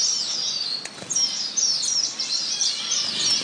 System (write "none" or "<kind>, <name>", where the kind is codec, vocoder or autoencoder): none